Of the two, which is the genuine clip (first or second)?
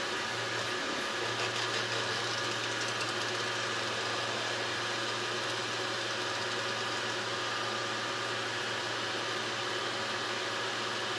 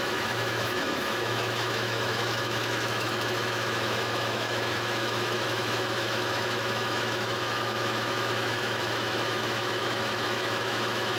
first